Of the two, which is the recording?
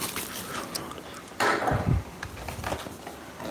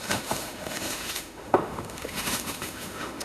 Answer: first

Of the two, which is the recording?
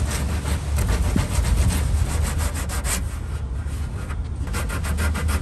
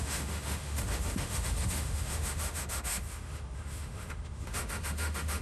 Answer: first